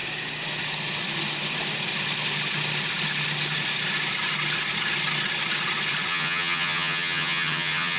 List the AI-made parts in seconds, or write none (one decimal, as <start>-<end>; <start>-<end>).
6.1-8.0